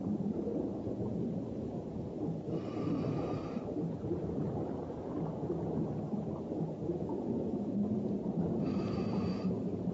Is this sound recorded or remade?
remade